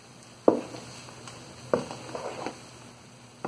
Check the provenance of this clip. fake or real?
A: real